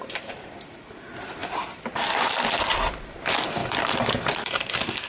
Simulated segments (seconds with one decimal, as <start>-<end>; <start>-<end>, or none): 0.0-5.1

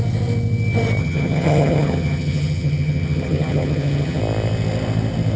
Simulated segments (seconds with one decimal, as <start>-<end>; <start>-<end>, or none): 1.0-4.2

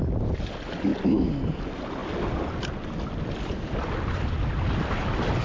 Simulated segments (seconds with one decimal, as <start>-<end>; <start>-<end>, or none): none

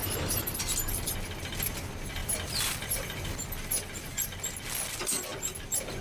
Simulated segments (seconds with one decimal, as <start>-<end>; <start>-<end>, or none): 2.2-3.7